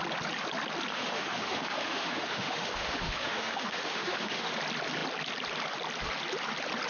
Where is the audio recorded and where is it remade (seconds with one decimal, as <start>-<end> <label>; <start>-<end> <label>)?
0.0-0.9 recorded; 0.9-4.5 remade; 4.5-6.9 recorded